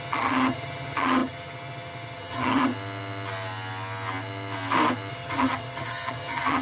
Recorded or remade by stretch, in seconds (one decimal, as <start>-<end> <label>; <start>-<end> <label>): 0.0-2.7 remade; 2.7-5.1 recorded; 5.1-6.6 remade